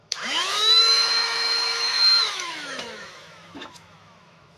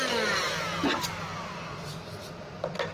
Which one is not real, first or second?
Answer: first